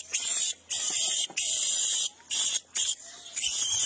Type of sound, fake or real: real